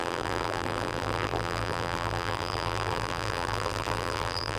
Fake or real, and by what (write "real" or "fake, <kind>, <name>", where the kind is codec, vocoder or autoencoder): fake, vocoder, BigVGAN v2